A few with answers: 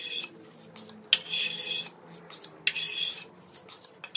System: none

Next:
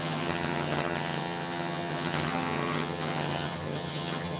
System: vocoder, HiFi-GAN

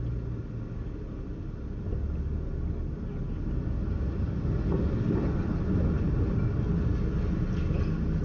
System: none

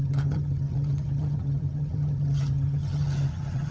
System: vocoder, HiFi-GAN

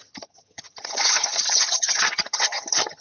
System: vocoder, HiFi-GAN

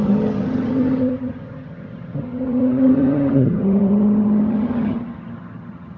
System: vocoder, HiFi-GAN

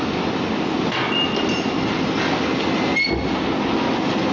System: none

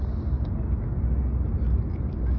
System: none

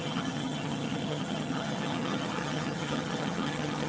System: vocoder, HiFi-GAN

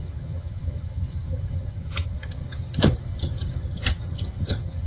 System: vocoder, HiFi-GAN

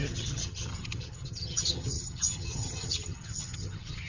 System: vocoder, HiFi-GAN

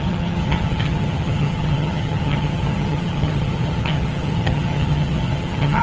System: vocoder, HiFi-GAN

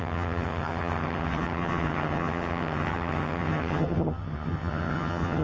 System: vocoder, HiFi-GAN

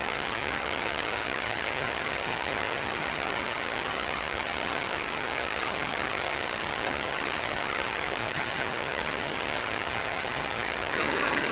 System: vocoder, HiFi-GAN